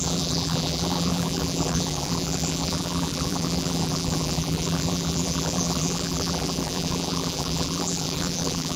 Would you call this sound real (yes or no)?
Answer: no